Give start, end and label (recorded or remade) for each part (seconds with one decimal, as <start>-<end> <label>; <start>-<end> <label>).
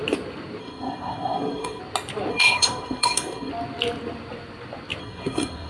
0.0-0.6 recorded; 0.6-1.8 remade; 1.8-2.3 recorded; 2.3-3.5 remade; 3.5-5.0 recorded; 5.0-5.7 remade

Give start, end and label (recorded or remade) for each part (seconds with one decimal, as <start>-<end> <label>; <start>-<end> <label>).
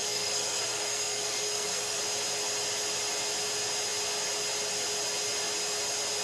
0.0-2.0 remade; 2.0-6.2 recorded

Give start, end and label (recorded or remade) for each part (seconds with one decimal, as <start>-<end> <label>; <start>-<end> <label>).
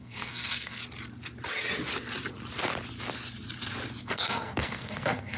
0.0-0.8 remade; 0.8-4.0 recorded; 4.0-5.4 remade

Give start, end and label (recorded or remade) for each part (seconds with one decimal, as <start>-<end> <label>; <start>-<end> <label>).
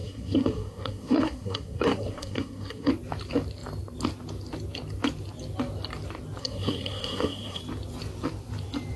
0.0-2.9 remade; 2.9-6.4 recorded; 6.4-7.6 remade; 7.6-9.0 recorded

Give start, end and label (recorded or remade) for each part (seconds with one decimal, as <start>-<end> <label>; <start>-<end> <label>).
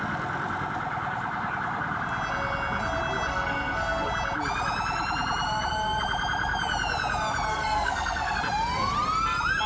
0.0-3.3 recorded; 3.3-4.1 remade; 4.1-7.5 recorded; 7.5-8.4 remade; 8.4-9.7 recorded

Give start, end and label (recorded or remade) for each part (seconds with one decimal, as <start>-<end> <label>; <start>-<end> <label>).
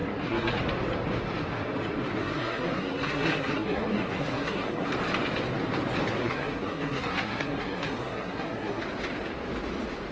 0.0-0.6 remade; 0.6-2.2 recorded; 2.2-4.9 remade; 4.9-6.2 recorded; 6.2-8.8 remade; 8.8-10.1 recorded